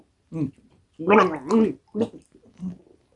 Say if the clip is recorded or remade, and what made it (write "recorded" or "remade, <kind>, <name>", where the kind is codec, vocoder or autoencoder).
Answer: recorded